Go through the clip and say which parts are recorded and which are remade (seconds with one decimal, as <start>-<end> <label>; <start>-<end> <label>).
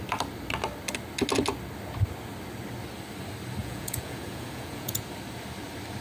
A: 0.0-3.6 recorded; 3.6-5.0 remade; 5.0-6.0 recorded